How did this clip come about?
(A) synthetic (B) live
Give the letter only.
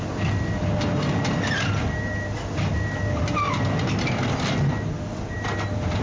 B